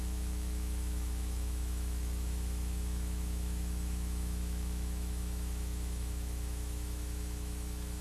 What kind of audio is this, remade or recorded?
remade